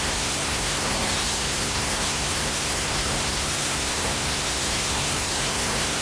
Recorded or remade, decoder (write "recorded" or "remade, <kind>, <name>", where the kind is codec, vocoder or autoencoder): remade, codec, SNAC